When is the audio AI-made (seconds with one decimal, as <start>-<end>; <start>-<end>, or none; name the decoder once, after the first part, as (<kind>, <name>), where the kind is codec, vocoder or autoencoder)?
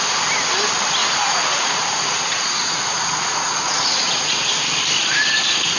1.0-4.5 (vocoder, Vocos)